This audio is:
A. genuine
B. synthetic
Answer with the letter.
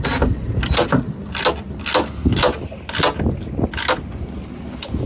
A